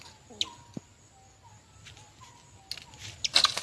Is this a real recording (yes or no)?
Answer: yes